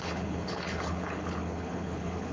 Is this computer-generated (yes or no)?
yes